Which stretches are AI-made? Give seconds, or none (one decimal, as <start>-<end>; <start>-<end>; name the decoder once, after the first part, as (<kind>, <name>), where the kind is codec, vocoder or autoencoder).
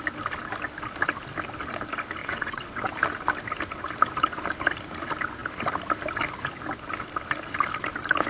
2.2-2.9 (vocoder, WaveNeXt)